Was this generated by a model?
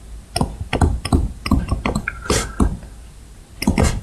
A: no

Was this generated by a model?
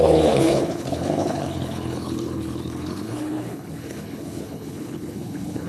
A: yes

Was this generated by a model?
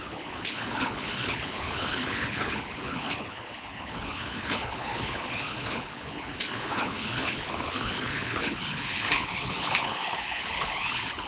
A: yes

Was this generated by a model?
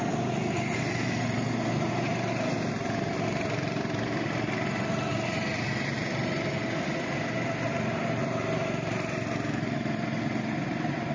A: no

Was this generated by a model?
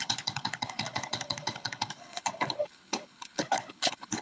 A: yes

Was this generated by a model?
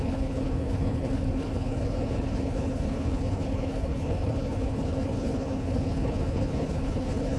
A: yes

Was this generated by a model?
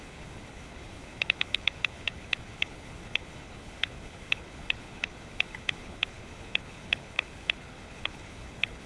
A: yes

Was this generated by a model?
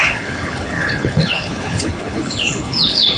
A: yes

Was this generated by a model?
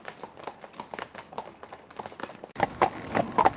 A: no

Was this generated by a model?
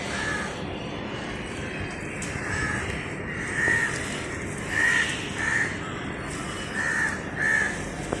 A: no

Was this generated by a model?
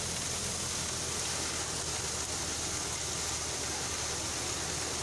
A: no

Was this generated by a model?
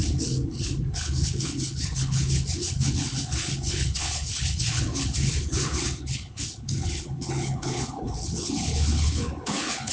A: yes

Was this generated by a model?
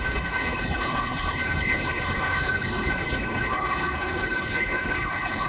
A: yes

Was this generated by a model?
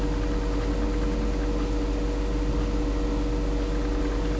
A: no